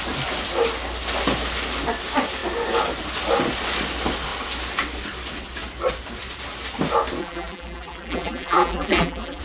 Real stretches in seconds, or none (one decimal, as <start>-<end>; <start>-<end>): 0.0-7.2